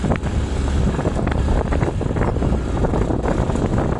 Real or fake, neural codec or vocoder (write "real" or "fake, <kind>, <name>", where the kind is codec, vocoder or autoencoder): real